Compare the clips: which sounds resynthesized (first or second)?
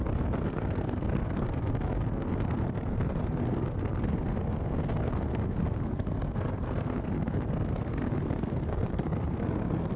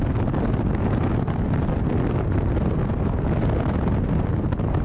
first